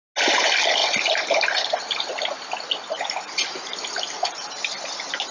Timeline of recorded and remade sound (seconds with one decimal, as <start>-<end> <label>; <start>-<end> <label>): 0.0-5.3 recorded